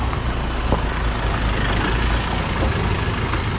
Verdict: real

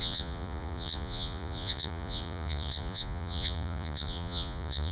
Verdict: fake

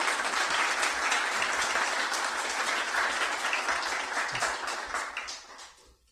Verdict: real